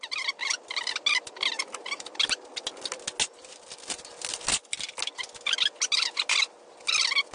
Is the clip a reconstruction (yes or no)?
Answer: no